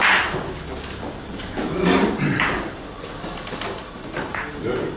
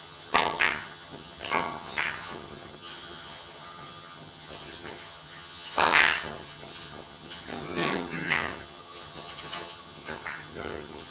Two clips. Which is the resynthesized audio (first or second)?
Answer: second